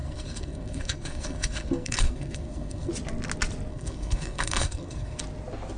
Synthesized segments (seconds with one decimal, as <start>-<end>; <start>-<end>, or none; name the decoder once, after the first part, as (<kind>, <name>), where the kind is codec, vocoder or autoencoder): 0.0-2.9 (codec, SNAC); 3.7-5.2